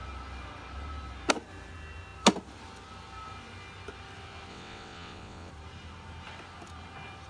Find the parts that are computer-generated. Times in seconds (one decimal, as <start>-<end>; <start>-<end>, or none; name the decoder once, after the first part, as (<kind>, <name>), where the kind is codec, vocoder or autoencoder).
4.5-5.5 (vocoder, WaveNeXt)